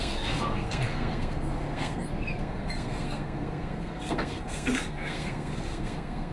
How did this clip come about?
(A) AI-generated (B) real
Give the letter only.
A